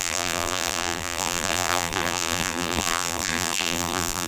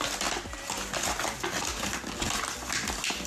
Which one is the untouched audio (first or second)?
second